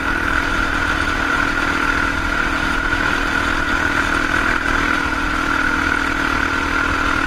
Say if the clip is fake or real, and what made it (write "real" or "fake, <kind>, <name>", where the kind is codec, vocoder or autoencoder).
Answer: real